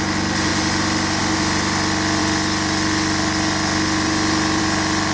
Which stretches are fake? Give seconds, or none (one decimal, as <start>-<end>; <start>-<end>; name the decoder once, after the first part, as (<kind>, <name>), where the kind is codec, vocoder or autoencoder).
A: none